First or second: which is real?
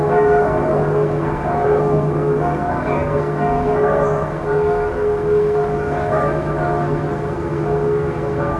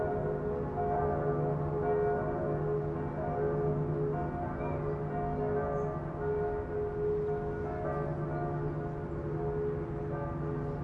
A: second